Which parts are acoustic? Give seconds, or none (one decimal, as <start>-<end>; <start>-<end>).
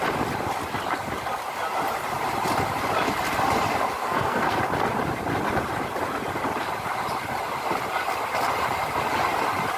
0.0-4.0; 4.6-9.8